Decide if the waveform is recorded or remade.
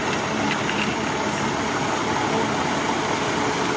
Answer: recorded